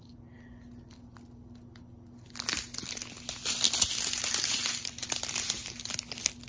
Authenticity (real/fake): real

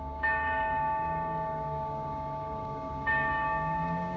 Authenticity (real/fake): fake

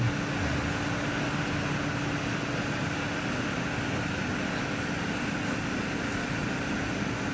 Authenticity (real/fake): real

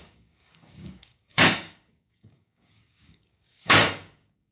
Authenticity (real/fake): fake